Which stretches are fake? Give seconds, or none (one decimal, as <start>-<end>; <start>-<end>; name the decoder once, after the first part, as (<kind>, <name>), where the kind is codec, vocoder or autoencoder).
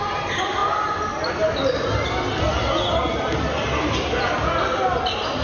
none